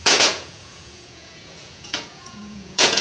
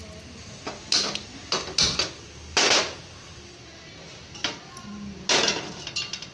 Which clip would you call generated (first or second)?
first